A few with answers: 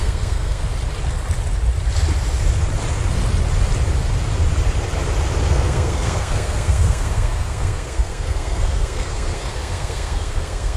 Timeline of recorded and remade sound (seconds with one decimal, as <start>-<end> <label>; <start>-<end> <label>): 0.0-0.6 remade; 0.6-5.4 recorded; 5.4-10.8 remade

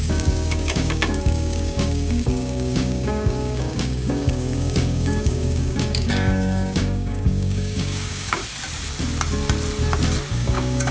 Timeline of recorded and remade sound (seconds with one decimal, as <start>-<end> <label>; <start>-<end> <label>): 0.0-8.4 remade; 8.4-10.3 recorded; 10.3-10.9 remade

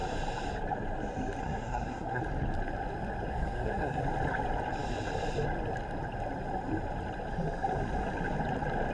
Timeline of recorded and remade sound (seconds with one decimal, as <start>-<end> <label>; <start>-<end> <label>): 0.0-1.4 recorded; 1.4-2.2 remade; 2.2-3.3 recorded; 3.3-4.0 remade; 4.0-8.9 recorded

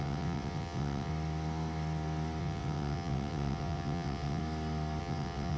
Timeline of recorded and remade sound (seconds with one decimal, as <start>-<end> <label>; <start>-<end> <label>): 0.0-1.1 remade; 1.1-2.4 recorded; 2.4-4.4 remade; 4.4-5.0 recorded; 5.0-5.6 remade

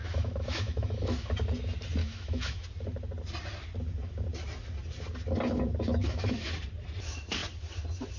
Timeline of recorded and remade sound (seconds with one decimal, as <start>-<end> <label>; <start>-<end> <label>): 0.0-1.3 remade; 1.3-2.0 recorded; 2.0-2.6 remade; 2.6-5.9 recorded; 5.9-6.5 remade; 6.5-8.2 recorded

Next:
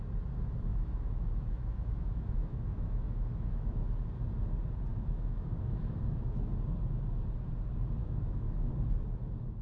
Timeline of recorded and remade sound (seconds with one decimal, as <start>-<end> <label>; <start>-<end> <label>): 0.0-0.7 recorded; 0.7-3.8 remade; 3.8-4.9 recorded; 4.9-6.5 remade; 6.5-8.0 recorded; 8.0-8.7 remade; 8.7-9.6 recorded

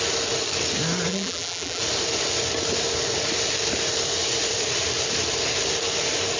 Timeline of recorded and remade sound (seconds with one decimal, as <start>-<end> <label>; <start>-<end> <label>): 0.0-1.1 recorded; 1.1-1.8 remade; 1.8-6.4 recorded